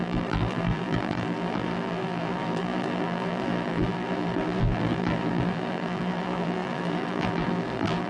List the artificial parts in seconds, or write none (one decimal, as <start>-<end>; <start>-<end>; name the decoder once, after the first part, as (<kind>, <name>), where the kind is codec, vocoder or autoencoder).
0.0-8.1 (vocoder, BigVGAN v2)